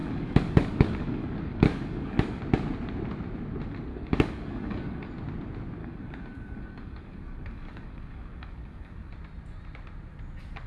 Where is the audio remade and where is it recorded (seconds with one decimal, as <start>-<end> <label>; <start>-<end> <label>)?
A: 0.0-2.4 remade; 2.4-3.9 recorded; 3.9-5.1 remade; 5.1-5.8 recorded; 5.8-9.1 remade; 9.1-10.7 recorded